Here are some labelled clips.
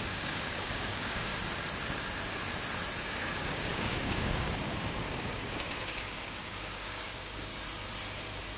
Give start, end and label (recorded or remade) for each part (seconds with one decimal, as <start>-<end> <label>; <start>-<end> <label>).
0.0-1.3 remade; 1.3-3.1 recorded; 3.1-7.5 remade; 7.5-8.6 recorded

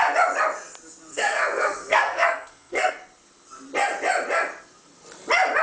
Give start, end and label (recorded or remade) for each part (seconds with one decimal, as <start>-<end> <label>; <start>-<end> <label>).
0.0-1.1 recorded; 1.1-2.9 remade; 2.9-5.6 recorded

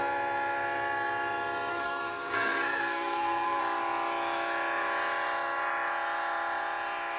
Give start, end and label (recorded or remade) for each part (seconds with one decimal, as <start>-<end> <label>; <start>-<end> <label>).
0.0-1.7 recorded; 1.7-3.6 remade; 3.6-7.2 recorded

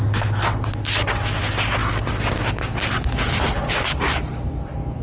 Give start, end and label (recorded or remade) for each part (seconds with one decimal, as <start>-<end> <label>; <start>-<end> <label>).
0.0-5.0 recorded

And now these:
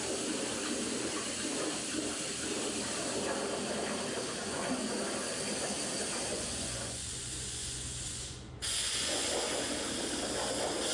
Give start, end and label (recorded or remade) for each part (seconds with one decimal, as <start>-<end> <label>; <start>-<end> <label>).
0.0-4.4 recorded; 4.4-5.0 remade; 5.0-6.3 recorded; 6.3-9.3 remade; 9.3-10.9 recorded